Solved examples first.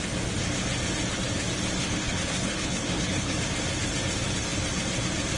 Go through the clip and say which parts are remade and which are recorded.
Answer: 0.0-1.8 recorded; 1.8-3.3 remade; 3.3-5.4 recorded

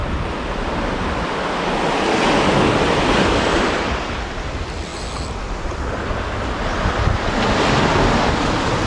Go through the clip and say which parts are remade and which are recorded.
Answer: 0.0-4.9 remade; 4.9-8.9 recorded

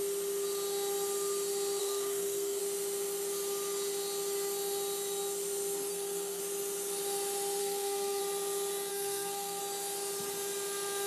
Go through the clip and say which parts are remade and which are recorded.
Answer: 0.0-1.8 recorded; 1.8-2.6 remade; 2.6-5.9 recorded; 5.9-6.4 remade; 6.4-7.6 recorded; 7.6-8.2 remade; 8.2-8.9 recorded; 8.9-9.6 remade; 9.6-11.1 recorded

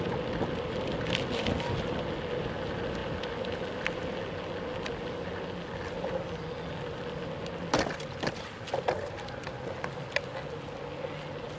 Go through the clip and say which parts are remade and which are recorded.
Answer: 0.0-11.6 recorded

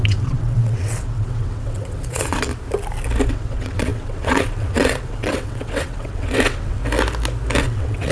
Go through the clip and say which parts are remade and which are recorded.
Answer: 0.0-2.5 remade; 2.5-3.3 recorded; 3.3-6.8 remade; 6.8-7.6 recorded; 7.6-8.1 remade